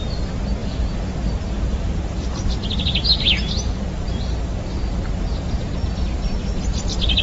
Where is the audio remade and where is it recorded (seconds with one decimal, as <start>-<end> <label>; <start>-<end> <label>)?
0.0-0.6 recorded; 0.6-1.9 remade; 1.9-7.2 recorded